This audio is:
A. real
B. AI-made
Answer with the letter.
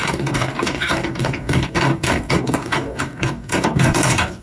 B